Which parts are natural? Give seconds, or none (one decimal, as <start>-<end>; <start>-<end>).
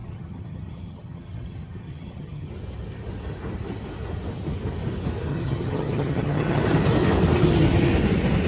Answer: 2.5-5.3; 6.6-8.5